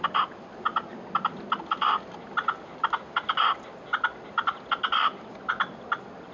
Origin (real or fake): real